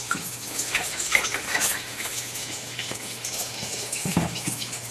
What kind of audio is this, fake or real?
fake